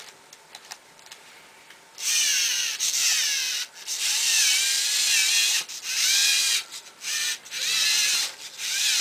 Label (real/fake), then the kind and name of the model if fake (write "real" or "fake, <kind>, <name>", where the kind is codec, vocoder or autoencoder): real